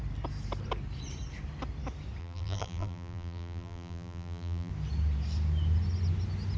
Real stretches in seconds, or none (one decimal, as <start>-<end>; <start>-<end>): 0.0-2.2; 4.7-6.6